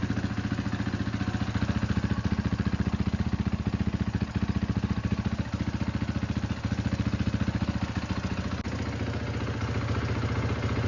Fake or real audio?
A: real